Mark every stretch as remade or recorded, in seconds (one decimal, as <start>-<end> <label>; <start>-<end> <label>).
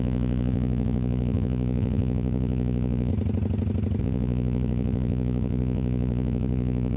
0.0-3.1 remade; 3.1-4.0 recorded; 4.0-7.0 remade